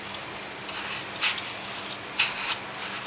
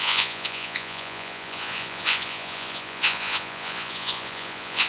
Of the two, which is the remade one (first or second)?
second